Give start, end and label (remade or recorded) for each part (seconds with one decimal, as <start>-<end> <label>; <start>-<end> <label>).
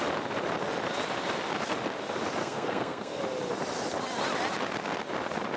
0.0-2.4 recorded; 2.4-3.2 remade; 3.2-5.6 recorded